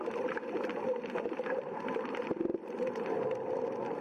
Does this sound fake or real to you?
real